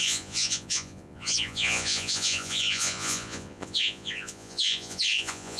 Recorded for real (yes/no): no